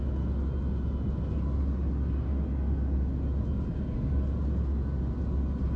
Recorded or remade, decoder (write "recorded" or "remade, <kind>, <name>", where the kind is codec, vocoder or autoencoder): recorded